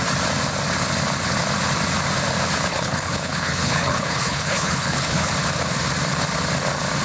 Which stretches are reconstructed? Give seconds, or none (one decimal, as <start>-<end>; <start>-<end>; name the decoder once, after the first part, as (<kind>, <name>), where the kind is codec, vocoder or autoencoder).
2.7-5.3 (codec, HILCodec)